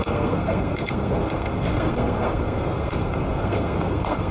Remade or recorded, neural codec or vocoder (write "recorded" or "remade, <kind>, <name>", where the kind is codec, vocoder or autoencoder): remade, codec, SNAC